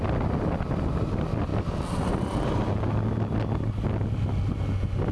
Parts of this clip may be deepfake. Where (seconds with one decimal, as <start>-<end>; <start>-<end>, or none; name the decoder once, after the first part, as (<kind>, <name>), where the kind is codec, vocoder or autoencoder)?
none